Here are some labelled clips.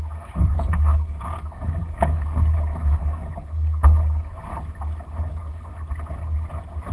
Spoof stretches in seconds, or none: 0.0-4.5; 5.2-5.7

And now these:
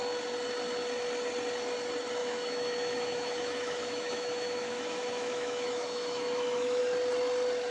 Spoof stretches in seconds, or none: 2.2-6.8

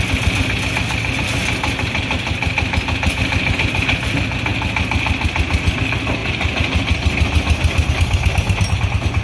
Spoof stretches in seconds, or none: none

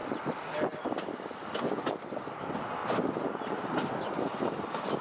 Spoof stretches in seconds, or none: none